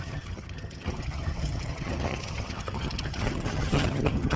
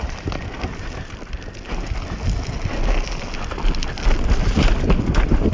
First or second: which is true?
second